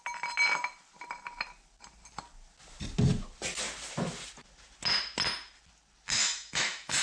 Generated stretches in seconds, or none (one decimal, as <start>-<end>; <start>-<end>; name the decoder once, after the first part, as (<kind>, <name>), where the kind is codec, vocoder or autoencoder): 6.2-7.0 (autoencoder, DAC-VAE)